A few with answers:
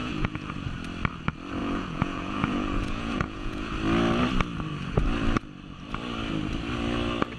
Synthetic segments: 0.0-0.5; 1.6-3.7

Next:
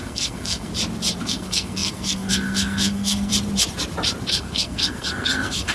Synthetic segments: 0.0-0.7; 1.2-3.3; 4.3-5.7

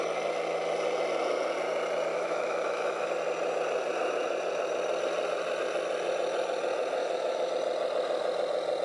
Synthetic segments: 2.1-3.1; 7.0-7.5

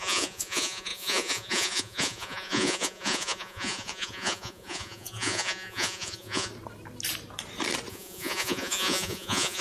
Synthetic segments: 0.0-6.5; 7.9-9.6

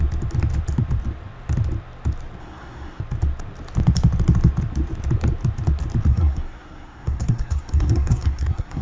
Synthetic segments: 2.4-3.0; 6.1-8.8

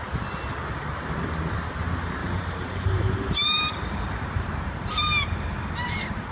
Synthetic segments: 0.6-1.2; 2.2-6.3

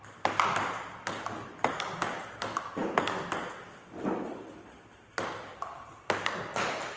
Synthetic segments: none